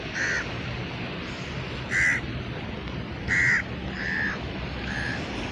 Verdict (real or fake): real